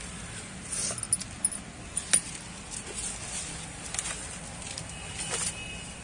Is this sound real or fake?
real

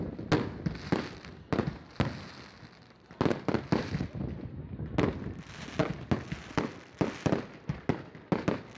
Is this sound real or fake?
real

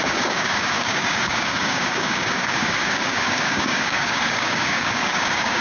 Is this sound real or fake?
fake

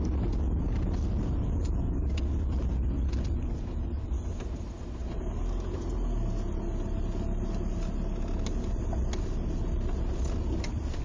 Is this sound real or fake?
real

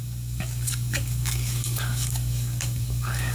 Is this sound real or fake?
fake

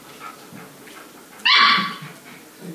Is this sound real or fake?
real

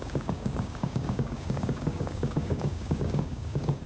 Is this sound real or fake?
fake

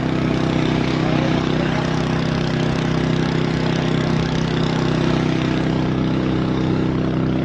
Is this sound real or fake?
fake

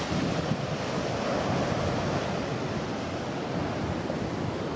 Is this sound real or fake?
real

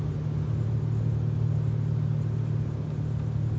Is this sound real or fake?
real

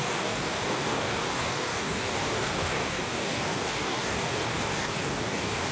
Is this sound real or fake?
fake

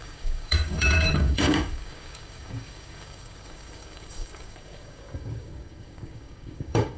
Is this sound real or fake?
fake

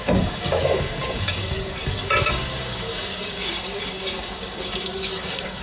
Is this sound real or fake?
fake